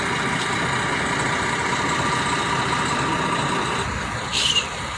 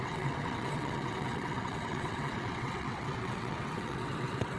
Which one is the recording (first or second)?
first